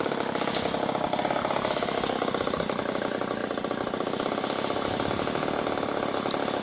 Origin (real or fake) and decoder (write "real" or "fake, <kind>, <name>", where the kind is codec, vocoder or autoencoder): real